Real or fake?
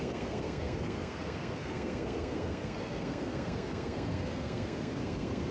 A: fake